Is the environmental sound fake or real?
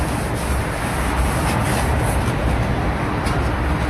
real